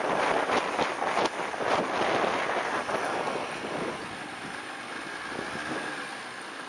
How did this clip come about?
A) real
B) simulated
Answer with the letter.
A